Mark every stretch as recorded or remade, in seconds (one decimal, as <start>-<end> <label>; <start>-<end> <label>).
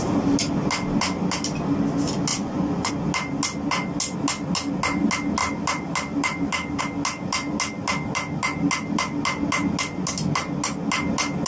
0.0-2.3 recorded; 2.3-2.9 remade; 2.9-11.5 recorded